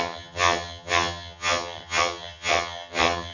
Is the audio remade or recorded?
remade